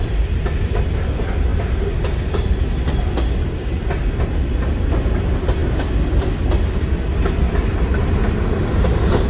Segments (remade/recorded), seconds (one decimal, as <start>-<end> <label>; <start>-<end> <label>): 0.0-9.3 recorded